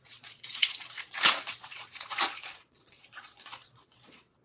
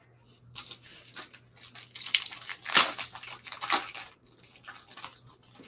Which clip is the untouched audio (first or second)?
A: second